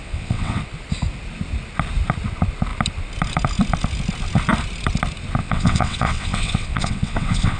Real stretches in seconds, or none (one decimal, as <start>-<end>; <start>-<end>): 0.6-5.4